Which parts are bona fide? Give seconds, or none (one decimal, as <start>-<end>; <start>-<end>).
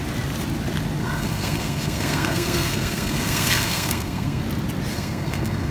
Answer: 0.0-1.0; 4.4-4.9